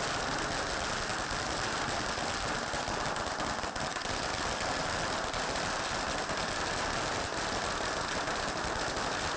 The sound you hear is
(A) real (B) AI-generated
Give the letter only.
A